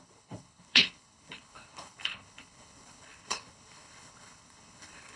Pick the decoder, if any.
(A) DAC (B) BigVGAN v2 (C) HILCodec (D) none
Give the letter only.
C